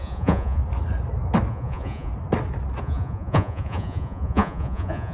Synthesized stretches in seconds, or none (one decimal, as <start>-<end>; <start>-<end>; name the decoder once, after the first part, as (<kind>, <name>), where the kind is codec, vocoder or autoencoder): 0.0-0.6 (vocoder, Vocos); 1.5-2.1; 2.8-5.1